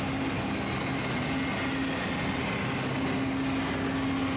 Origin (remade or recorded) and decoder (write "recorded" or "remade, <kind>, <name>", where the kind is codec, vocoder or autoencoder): recorded